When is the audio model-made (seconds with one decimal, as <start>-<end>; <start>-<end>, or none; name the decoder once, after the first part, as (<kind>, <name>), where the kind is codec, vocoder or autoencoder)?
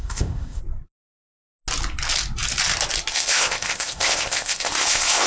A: 0.0-0.6 (codec, ZipCodec); 3.1-5.3